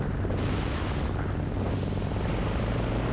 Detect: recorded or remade recorded